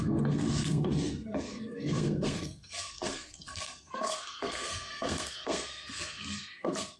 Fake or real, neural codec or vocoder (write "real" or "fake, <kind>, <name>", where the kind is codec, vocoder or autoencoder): fake, codec, SNAC